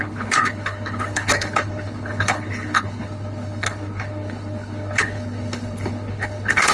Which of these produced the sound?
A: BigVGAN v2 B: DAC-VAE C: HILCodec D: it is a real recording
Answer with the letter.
C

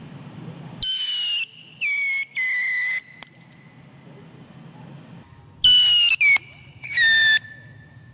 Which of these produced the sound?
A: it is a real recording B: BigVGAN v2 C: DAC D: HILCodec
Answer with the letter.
A